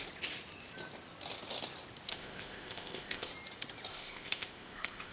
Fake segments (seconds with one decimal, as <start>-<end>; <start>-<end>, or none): 2.1-3.3; 3.9-5.1